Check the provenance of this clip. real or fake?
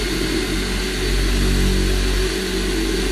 real